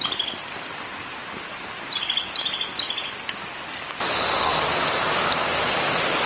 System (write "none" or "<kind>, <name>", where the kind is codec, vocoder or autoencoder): none